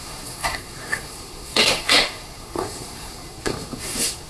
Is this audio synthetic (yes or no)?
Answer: yes